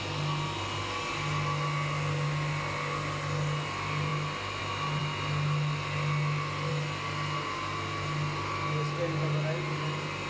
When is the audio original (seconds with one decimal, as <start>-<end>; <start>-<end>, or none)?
0.0-10.3